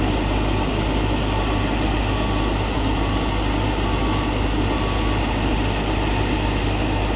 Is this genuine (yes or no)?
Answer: yes